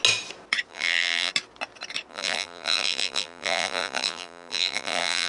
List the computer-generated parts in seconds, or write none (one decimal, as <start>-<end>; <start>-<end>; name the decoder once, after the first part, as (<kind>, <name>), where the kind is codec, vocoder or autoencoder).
0.7-1.3 (vocoder, BigVGAN v2); 2.1-5.3